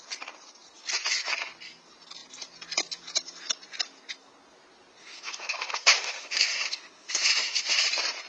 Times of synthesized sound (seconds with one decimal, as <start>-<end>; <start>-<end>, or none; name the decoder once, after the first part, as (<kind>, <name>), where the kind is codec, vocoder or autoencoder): 5.0-7.9 (autoencoder, DAC-VAE)